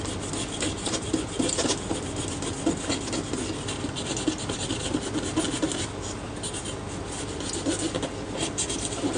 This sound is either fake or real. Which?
real